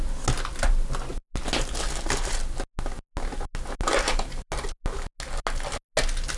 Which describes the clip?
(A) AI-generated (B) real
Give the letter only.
B